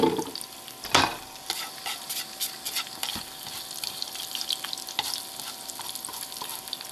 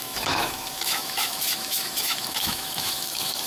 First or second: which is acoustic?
first